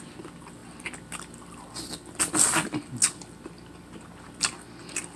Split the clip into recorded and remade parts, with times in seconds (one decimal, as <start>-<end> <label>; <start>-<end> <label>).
0.0-5.2 recorded